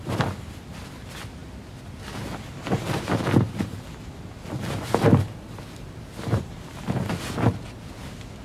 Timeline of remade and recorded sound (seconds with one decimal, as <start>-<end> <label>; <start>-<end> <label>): 0.0-8.4 recorded